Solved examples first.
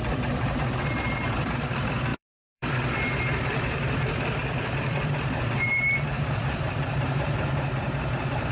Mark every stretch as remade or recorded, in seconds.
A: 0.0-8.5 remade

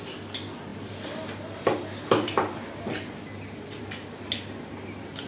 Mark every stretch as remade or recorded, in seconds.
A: 0.0-5.3 recorded

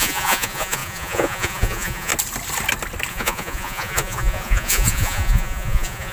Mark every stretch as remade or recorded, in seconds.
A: 0.0-2.1 remade; 2.1-3.1 recorded; 3.1-6.1 remade

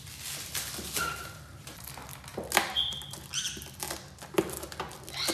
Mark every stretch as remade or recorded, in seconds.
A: 0.0-5.3 recorded

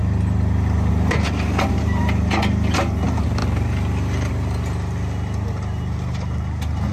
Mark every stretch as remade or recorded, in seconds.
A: 0.0-6.9 recorded

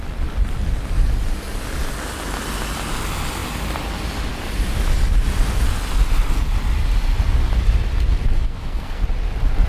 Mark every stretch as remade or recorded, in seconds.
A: 0.0-8.3 recorded; 8.3-9.0 remade; 9.0-9.7 recorded

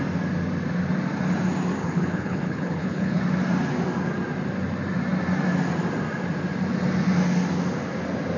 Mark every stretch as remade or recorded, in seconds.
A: 0.0-1.8 recorded; 1.8-3.2 remade; 3.2-8.4 recorded